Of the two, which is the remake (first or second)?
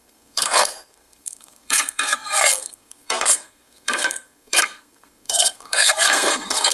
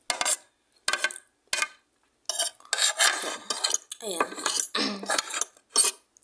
first